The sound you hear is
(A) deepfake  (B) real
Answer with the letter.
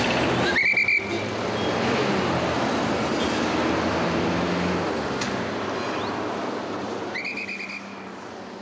B